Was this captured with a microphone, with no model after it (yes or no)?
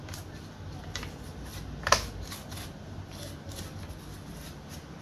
yes